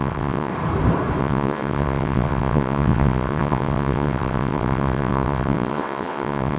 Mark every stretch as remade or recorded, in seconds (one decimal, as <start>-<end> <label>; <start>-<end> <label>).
0.0-0.5 remade; 0.5-1.2 recorded; 1.2-6.6 remade